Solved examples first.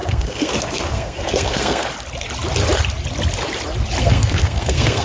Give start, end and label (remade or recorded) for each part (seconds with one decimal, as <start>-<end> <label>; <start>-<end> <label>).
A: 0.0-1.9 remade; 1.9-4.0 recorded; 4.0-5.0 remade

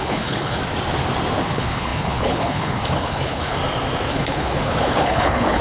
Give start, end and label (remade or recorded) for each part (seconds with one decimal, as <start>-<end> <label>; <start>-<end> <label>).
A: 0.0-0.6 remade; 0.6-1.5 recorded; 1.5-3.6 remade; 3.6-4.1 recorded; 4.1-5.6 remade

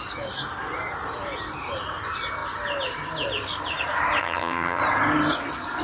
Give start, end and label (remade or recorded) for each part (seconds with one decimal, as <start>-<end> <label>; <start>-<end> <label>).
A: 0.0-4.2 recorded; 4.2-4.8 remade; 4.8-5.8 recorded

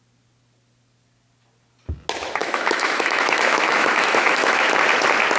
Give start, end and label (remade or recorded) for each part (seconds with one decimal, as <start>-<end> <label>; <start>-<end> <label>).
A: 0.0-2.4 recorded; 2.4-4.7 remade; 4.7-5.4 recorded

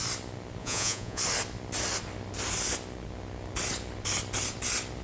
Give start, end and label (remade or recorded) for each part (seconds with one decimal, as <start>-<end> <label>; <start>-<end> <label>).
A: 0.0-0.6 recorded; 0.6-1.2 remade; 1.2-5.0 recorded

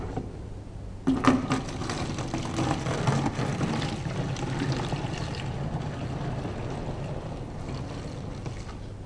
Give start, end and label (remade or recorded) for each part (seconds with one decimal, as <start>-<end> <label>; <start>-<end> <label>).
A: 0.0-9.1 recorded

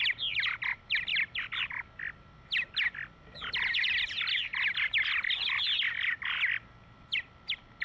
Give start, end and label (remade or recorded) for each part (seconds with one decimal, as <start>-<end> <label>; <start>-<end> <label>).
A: 0.0-7.8 recorded